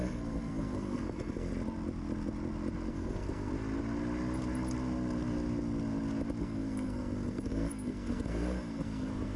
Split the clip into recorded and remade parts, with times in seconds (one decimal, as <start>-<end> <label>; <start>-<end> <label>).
0.0-1.5 remade; 1.5-2.9 recorded; 2.9-3.5 remade; 3.5-6.4 recorded; 6.4-9.4 remade